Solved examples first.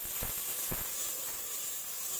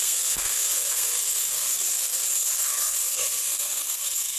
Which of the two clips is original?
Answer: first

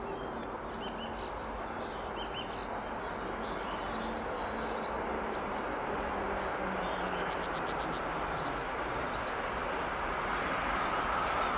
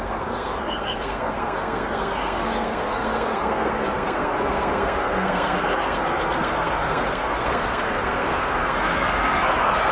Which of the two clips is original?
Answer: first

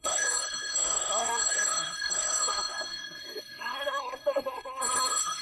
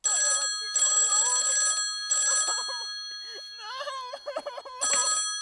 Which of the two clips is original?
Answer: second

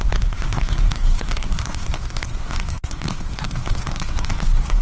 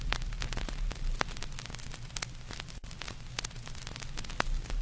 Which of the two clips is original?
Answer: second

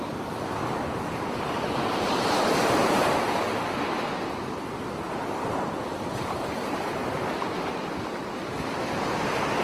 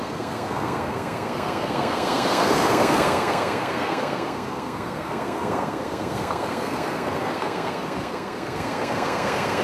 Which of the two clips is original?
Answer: first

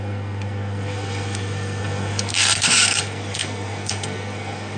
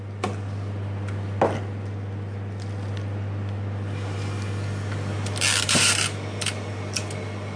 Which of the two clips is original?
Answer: second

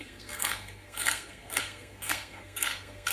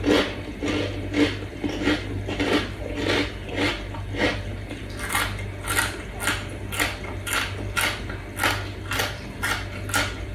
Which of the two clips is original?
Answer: second